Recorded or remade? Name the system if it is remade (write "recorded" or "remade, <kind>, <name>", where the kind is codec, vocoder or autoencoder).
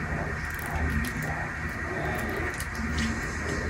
recorded